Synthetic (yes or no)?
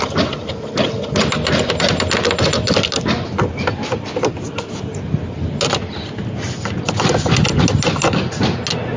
no